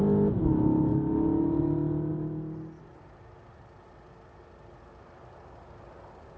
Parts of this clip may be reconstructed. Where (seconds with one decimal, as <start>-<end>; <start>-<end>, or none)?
none